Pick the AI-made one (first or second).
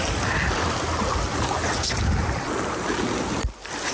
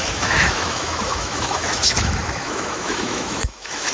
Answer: second